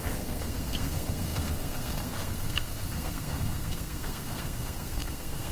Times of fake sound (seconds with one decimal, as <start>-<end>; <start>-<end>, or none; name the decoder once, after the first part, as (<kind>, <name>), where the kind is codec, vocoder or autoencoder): 0.0-5.5 (codec, SNAC)

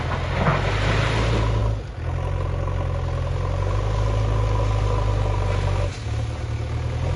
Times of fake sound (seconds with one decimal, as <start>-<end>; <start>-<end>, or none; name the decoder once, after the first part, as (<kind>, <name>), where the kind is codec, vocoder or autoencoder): none

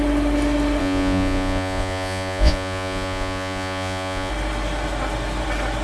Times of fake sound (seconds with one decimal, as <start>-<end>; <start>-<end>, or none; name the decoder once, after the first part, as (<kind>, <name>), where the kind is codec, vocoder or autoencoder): 0.8-4.3 (vocoder, Vocos)

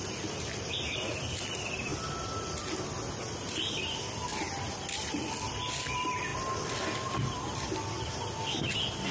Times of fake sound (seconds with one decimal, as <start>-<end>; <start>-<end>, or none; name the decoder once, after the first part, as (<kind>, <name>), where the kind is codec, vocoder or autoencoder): none

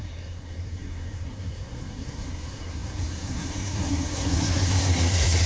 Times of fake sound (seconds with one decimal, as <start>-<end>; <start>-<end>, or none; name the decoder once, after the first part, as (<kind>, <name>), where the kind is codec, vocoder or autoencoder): 0.0-5.5 (codec, SNAC)

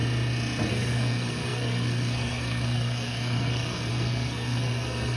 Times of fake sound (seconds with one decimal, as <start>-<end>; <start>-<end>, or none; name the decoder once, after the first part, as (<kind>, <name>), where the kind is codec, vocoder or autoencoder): 0.7-5.2 (codec, SNAC)